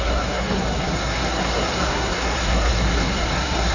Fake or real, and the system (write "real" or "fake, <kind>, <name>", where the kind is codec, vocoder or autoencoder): fake, codec, SNAC